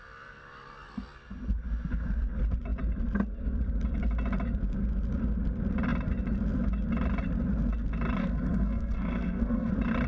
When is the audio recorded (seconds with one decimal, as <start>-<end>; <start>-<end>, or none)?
0.0-8.2; 9.7-10.1